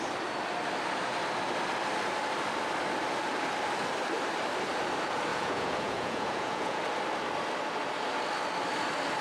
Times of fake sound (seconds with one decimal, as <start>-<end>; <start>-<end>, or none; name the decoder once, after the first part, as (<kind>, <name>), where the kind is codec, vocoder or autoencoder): 5.3-6.8 (vocoder, Vocos)